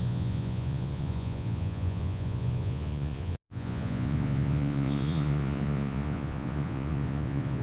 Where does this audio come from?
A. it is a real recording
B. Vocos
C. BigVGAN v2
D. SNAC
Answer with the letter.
B